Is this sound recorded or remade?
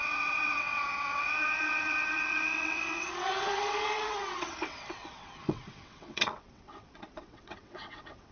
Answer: remade